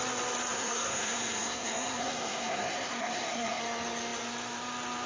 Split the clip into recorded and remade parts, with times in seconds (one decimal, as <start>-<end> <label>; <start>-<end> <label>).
0.0-0.5 recorded; 0.5-3.6 remade; 3.6-5.1 recorded